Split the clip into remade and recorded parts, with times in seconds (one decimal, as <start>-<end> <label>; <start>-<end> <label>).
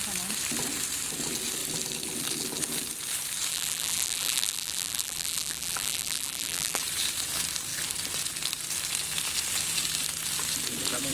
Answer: 0.0-3.5 recorded; 3.5-6.8 remade; 6.8-11.1 recorded